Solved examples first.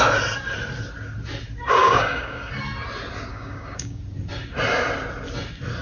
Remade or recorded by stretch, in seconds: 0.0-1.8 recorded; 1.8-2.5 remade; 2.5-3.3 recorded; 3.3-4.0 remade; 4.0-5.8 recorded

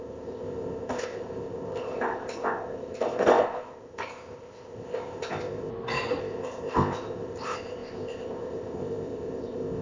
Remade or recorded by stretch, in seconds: 0.0-5.7 remade; 5.7-6.2 recorded; 6.2-9.8 remade

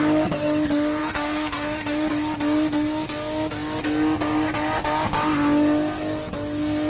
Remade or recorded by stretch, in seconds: 0.0-1.0 recorded; 1.0-2.1 remade; 2.1-6.9 recorded